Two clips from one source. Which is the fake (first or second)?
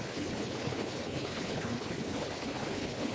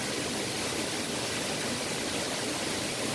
first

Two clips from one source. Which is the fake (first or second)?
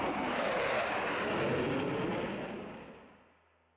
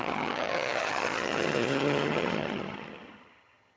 second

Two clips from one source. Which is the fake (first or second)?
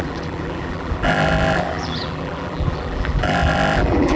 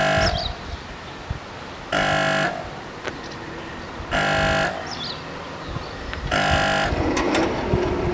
first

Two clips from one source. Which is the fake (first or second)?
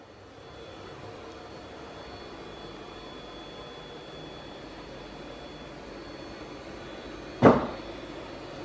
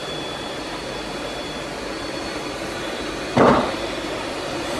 second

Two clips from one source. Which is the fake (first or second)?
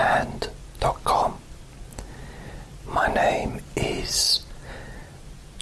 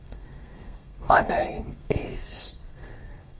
second